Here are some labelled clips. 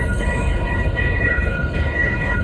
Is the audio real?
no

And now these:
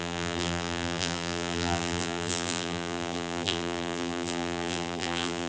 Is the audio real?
no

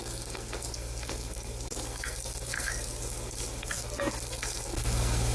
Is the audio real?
no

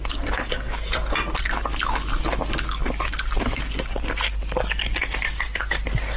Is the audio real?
yes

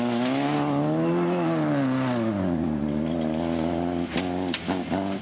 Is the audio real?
yes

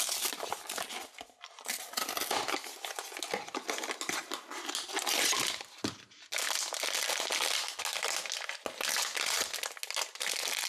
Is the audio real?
yes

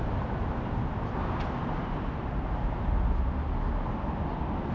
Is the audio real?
yes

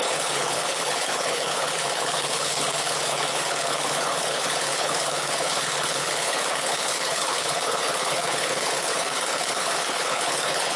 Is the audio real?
no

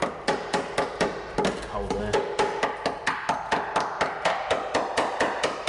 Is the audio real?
yes